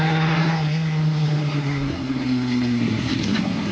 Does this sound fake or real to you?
fake